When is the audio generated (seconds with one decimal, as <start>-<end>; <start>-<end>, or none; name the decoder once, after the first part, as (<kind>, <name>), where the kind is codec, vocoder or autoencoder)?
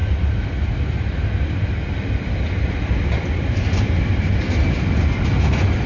none